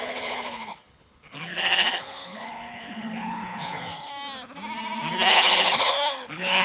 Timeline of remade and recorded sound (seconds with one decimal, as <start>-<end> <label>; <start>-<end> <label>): 0.0-4.1 remade; 4.1-5.3 recorded; 5.3-6.6 remade

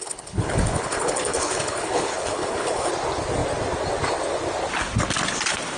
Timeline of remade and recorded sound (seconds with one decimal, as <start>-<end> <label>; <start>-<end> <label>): 0.0-2.9 remade; 2.9-5.8 recorded

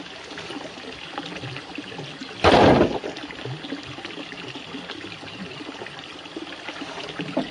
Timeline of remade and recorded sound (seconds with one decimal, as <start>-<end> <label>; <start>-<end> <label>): 0.0-7.5 recorded

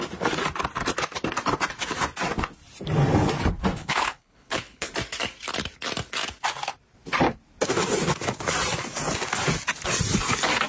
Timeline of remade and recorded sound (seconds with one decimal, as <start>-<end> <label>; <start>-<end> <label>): 0.0-3.8 recorded; 3.8-4.9 remade; 4.9-10.7 recorded

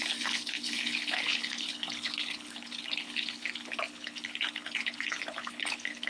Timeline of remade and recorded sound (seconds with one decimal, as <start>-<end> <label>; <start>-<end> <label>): 0.0-6.1 remade

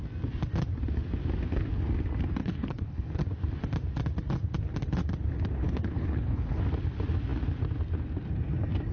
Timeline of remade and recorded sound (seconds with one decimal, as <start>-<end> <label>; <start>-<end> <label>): 0.0-2.4 recorded; 2.4-3.2 remade; 3.2-5.6 recorded; 5.6-6.6 remade; 6.6-8.9 recorded

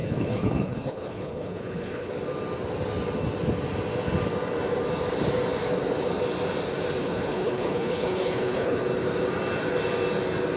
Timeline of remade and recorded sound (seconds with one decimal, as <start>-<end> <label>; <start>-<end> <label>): 0.0-2.1 remade; 2.1-7.0 recorded; 7.0-8.8 remade; 8.8-10.6 recorded

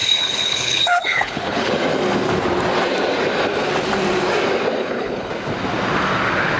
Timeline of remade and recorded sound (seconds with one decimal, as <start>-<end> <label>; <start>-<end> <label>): 0.0-1.7 remade; 1.7-4.8 recorded; 4.8-5.3 remade; 5.3-6.6 recorded